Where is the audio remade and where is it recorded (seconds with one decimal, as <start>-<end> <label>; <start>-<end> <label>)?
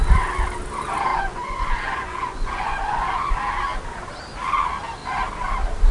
0.0-1.1 recorded; 1.1-3.3 remade; 3.3-5.9 recorded